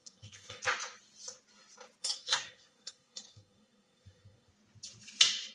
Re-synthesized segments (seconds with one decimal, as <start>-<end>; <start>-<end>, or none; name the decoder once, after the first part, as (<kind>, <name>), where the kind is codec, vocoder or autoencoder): 0.0-0.6 (codec, SNAC); 2.0-4.5